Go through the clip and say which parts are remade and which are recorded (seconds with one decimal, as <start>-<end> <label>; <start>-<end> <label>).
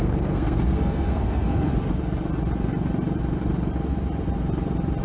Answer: 0.0-1.7 remade; 1.7-5.0 recorded